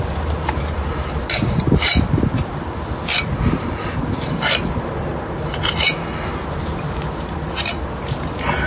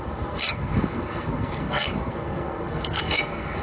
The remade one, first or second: second